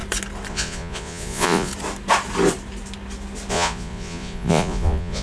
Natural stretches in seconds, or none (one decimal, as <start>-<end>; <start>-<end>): 0.0-0.5; 1.7-3.5